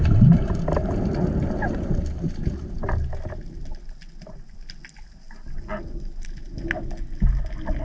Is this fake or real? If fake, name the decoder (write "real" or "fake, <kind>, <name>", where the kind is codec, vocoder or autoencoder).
real